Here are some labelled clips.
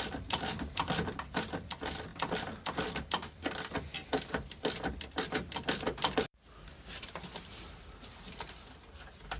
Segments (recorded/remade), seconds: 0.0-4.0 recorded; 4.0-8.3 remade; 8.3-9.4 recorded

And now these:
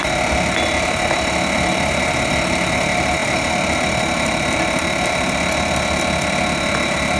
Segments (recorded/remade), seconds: 0.0-7.2 recorded

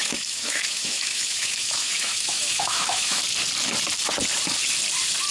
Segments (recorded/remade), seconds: 0.0-3.2 remade; 3.2-5.3 recorded